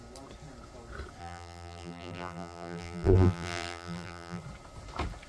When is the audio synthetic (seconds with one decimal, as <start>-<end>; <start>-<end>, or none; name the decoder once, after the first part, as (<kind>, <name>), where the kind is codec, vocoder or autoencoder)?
1.2-4.4 (vocoder, BigVGAN v2)